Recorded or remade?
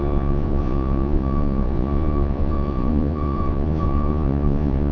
remade